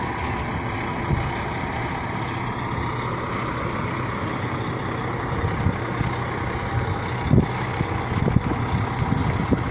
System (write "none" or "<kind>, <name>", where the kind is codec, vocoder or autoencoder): none